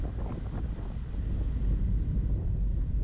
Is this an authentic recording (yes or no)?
yes